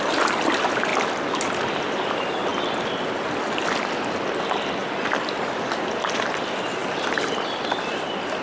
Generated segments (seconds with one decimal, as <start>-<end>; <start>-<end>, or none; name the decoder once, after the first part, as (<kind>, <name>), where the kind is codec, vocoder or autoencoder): 2.5-3.6 (vocoder, BigVGAN v2); 4.8-5.6; 6.8-8.4